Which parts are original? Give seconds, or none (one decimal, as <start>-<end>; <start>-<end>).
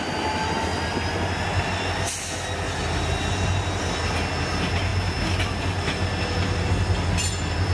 0.0-7.7